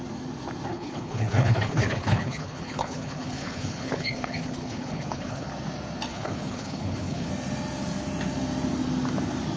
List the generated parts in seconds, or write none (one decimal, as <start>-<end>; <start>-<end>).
0.7-5.5; 6.1-7.3